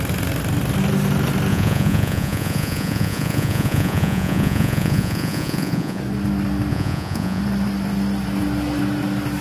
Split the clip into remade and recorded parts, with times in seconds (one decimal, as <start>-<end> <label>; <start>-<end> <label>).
0.0-1.5 recorded; 1.5-6.0 remade; 6.0-6.7 recorded; 6.7-7.4 remade; 7.4-9.4 recorded

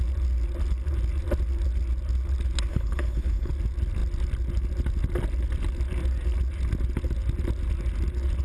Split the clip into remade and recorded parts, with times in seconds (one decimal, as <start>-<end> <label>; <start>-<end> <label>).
0.0-2.7 recorded; 2.7-3.5 remade; 3.5-8.4 recorded

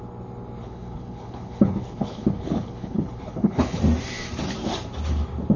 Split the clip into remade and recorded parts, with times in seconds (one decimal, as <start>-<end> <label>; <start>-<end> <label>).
0.0-0.6 recorded; 0.6-3.8 remade; 3.8-5.6 recorded

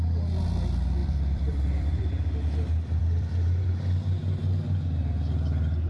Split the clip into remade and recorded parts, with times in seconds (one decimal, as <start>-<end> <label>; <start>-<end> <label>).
0.0-1.0 recorded; 1.0-2.1 remade; 2.1-3.0 recorded; 3.0-3.7 remade; 3.7-5.9 recorded